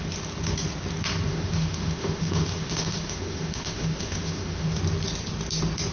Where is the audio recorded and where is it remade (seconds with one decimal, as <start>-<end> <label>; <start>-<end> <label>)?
0.0-1.3 recorded; 1.3-4.8 remade; 4.8-5.9 recorded